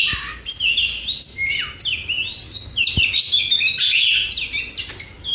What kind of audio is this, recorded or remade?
recorded